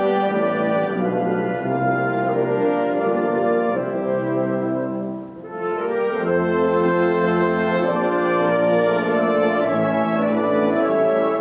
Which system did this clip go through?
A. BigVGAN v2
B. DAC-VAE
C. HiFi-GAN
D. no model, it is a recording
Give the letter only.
D